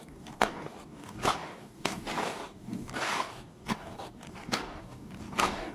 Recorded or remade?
remade